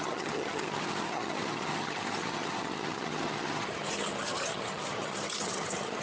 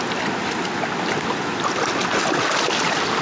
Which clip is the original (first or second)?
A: second